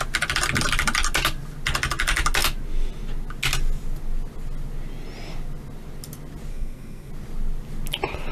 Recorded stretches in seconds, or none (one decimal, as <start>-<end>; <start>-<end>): 0.0-6.5; 7.1-8.3